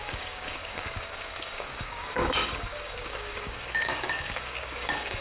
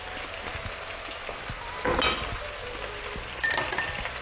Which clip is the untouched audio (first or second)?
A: second